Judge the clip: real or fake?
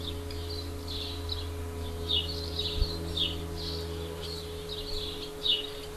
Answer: real